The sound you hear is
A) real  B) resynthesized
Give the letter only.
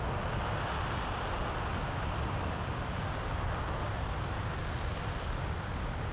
A